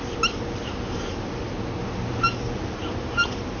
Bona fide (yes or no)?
yes